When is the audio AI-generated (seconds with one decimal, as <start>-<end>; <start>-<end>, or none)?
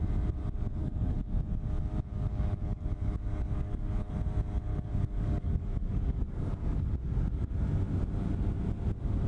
0.8-1.3; 2.1-4.1; 4.7-7.5